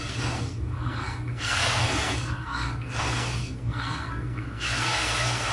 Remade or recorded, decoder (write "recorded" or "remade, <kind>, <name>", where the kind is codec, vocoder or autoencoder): remade, codec, SNAC